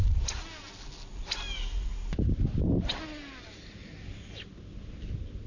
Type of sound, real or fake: real